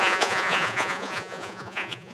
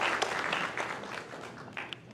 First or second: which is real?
second